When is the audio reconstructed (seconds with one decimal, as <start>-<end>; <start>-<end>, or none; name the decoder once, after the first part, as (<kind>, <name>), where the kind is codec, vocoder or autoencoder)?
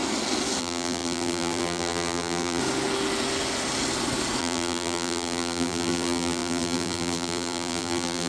0.6-2.6 (vocoder, BigVGAN v2); 4.4-8.3